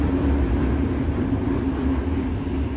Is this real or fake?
real